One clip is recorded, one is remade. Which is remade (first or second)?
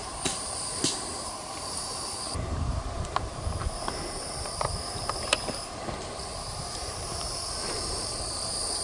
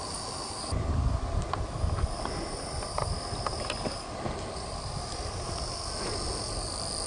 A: first